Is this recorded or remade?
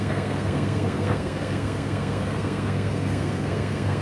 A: remade